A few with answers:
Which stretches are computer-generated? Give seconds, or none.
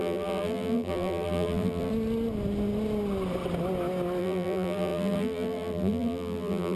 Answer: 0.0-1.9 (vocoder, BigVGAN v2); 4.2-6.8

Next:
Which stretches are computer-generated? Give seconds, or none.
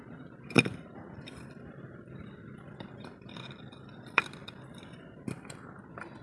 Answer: 0.0-6.2 (vocoder, BigVGAN v2)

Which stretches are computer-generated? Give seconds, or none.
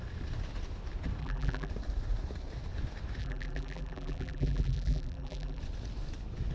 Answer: 1.2-1.7 (vocoder, BigVGAN v2); 3.2-5.6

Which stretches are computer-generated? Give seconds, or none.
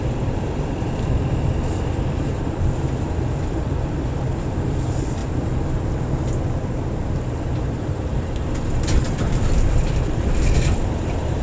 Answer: 0.0-5.2 (vocoder, BigVGAN v2); 6.6-8.1; 9.1-11.4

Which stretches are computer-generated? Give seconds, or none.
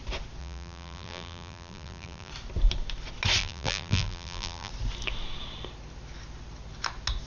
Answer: 0.4-2.3 (vocoder, BigVGAN v2); 3.4-4.7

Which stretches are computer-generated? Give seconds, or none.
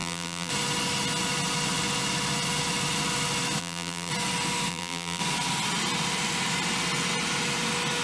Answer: 0.0-0.5 (vocoder, BigVGAN v2); 3.6-4.1; 4.7-5.2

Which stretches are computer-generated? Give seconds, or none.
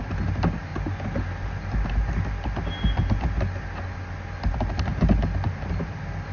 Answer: 0.0-0.7 (vocoder, BigVGAN v2); 4.5-4.9; 5.7-6.3